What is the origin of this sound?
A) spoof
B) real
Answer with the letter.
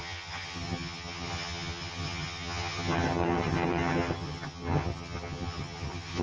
A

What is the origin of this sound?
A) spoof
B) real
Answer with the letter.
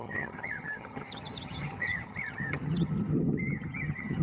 A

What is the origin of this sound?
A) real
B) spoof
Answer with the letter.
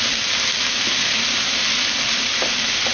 A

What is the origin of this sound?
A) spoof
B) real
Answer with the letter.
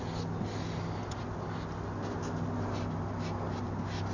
B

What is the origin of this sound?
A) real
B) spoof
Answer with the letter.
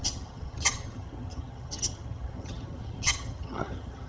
B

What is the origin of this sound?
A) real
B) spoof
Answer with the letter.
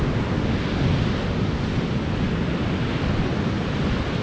A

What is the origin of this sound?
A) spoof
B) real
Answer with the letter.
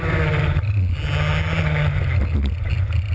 B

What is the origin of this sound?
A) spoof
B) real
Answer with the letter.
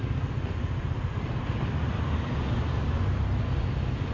B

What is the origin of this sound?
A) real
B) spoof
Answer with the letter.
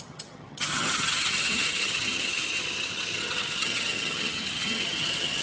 B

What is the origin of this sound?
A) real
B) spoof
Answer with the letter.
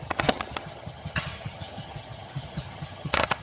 B